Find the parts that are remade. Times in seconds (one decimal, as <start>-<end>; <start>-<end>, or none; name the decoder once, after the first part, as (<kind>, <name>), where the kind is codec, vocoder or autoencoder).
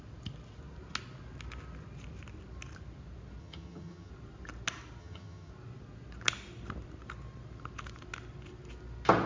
3.4-4.1 (vocoder, HiFi-GAN); 5.0-5.5